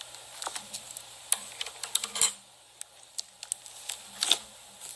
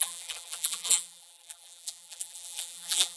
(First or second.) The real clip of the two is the first